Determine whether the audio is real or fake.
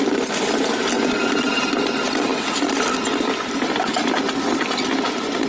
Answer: real